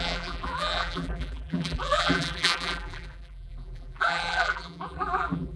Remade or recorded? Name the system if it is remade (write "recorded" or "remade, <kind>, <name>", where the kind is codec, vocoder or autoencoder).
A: remade, vocoder, BigVGAN v2